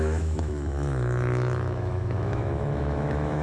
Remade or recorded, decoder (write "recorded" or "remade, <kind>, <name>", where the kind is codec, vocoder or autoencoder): remade, autoencoder, DAC-VAE